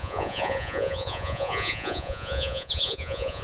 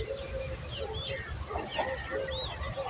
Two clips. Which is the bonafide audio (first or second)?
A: second